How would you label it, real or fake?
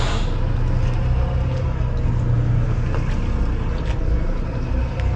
real